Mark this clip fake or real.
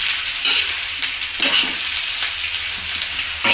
real